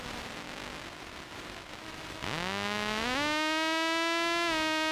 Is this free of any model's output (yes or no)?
yes